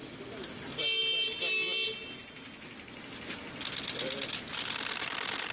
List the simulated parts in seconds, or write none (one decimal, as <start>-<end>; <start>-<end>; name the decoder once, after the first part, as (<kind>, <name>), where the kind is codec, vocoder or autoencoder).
0.0-0.6 (vocoder, BigVGAN v2)